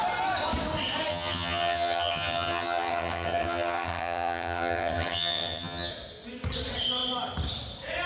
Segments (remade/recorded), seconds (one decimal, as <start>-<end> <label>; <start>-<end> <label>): 0.0-1.1 recorded; 1.1-5.9 remade; 5.9-8.1 recorded